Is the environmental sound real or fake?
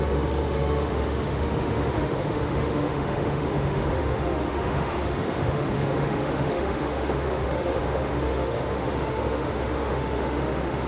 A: fake